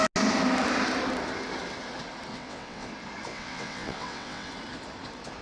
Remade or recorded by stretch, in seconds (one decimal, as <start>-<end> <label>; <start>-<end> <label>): 0.0-2.3 recorded; 2.3-2.9 remade; 2.9-3.3 recorded; 3.3-4.5 remade; 4.5-5.4 recorded